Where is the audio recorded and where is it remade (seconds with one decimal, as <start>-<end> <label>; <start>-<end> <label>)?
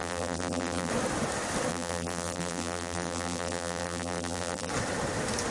0.0-0.9 remade; 0.9-1.7 recorded; 1.7-4.7 remade; 4.7-5.5 recorded